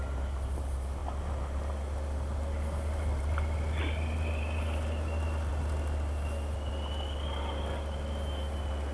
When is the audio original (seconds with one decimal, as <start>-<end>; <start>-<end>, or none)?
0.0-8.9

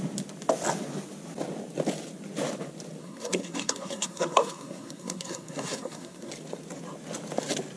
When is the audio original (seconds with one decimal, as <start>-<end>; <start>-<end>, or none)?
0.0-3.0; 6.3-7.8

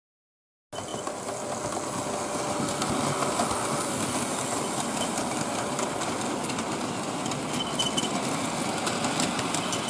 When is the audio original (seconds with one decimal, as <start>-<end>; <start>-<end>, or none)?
0.0-9.9

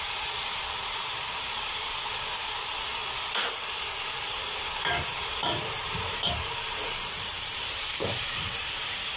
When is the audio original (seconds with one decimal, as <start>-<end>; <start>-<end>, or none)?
2.7-3.5

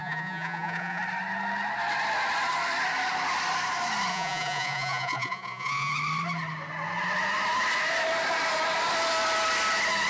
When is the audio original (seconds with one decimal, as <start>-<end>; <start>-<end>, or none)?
1.0-4.1; 5.9-10.1

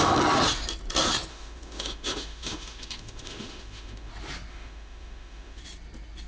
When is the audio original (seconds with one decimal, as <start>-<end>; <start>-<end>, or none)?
0.0-1.3; 4.1-4.5; 5.6-6.3